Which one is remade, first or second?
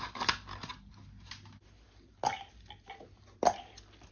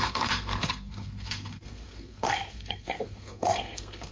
second